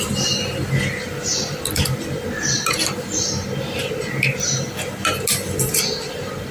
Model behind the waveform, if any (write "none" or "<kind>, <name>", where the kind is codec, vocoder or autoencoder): none